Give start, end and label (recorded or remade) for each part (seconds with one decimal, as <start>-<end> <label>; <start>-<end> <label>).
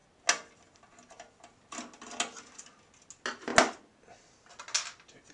0.0-5.3 recorded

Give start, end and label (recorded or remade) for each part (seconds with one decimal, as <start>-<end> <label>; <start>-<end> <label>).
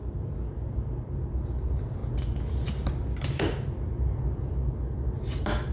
0.0-2.0 remade; 2.0-5.7 recorded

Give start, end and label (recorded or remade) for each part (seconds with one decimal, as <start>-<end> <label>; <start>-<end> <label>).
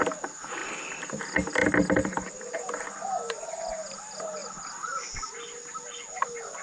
0.0-1.6 recorded; 1.6-3.6 remade; 3.6-6.6 recorded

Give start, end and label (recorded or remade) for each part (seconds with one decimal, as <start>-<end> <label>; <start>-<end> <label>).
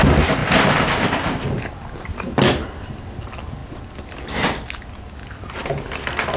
0.0-2.1 recorded; 2.1-2.7 remade; 2.7-6.4 recorded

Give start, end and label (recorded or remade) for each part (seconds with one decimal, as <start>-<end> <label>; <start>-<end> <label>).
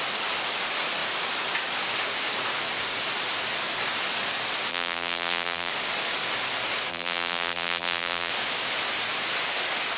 0.0-4.7 recorded; 4.7-5.7 remade; 5.7-6.9 recorded; 6.9-8.3 remade; 8.3-10.0 recorded